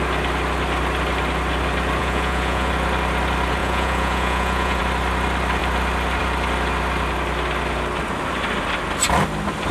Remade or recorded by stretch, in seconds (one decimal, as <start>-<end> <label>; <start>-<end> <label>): 0.0-2.0 recorded; 2.0-2.7 remade; 2.7-3.6 recorded; 3.6-4.8 remade; 4.8-9.7 recorded